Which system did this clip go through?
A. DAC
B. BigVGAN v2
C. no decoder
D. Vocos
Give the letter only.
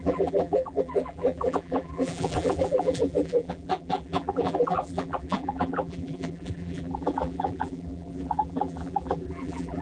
B